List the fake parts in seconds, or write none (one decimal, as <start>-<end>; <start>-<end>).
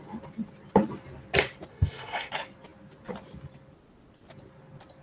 1.7-2.3